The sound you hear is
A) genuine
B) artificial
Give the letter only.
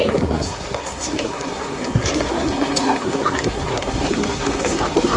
B